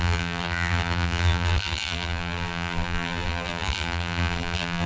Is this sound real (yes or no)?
no